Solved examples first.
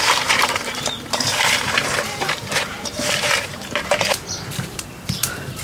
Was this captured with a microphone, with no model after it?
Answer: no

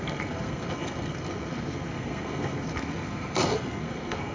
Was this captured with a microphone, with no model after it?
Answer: no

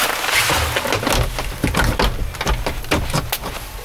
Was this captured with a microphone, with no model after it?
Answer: yes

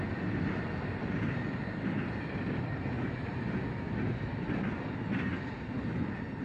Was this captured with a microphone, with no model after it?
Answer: yes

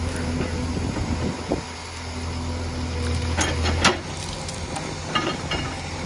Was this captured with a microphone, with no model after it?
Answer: yes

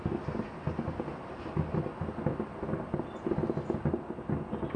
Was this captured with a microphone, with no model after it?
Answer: yes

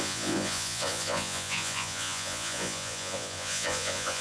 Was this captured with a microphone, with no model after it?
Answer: no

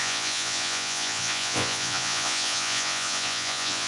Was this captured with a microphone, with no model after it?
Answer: no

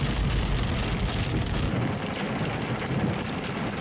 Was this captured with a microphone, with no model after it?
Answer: yes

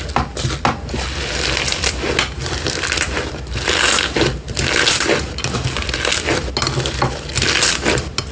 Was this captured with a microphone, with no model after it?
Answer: yes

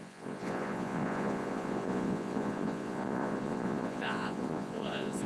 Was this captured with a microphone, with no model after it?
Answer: no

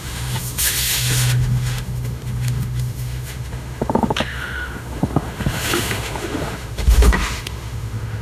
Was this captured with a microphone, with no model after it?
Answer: no